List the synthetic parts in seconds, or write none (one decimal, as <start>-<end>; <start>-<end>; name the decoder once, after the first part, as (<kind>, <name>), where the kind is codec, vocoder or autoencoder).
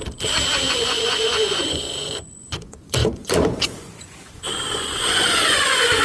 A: 0.7-6.0 (vocoder, Vocos)